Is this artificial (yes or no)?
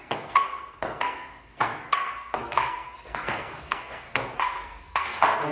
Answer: yes